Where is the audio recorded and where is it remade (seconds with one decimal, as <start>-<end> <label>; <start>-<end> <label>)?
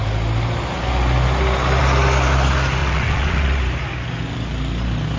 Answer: 0.0-2.8 recorded; 2.8-3.6 remade; 3.6-5.2 recorded